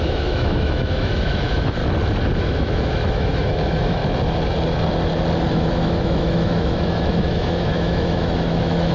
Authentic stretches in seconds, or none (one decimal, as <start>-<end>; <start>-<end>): 1.8-2.4; 4.0-5.5